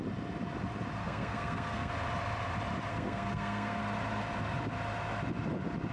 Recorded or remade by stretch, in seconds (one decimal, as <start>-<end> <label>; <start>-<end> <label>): 0.0-1.0 recorded; 1.0-1.9 remade; 1.9-2.9 recorded; 2.9-3.8 remade; 3.8-5.9 recorded